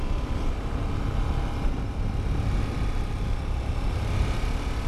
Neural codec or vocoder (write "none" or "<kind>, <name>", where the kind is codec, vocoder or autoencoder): none